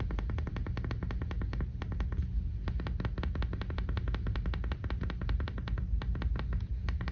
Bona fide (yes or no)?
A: yes